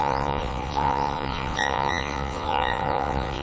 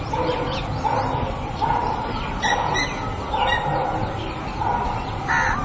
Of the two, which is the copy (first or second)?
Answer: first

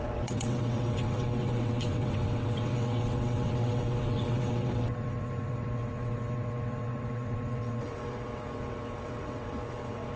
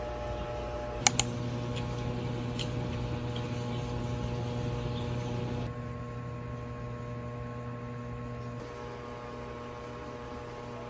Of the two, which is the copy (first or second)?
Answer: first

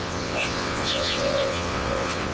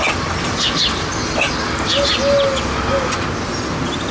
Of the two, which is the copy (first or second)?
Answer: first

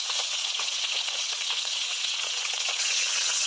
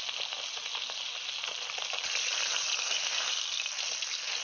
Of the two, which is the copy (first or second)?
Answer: first